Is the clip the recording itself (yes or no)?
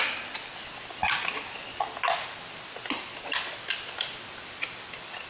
yes